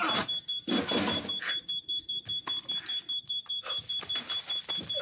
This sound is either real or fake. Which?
fake